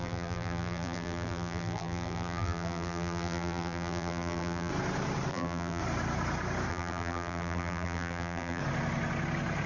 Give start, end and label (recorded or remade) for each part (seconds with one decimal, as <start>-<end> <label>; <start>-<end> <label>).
0.0-4.7 remade; 4.7-5.3 recorded; 5.3-5.8 remade; 5.8-6.7 recorded; 6.7-8.6 remade; 8.6-9.7 recorded